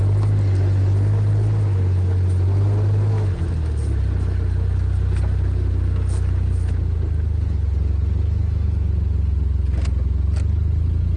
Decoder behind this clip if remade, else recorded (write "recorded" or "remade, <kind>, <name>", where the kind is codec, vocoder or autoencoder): recorded